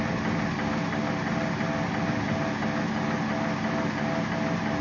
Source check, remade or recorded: recorded